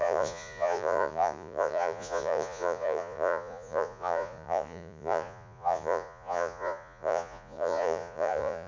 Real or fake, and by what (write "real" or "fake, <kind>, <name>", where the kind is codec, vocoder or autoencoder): fake, vocoder, Vocos